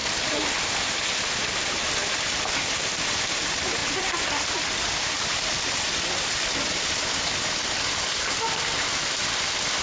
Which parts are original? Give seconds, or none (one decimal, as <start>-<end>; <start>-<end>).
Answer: 0.0-9.8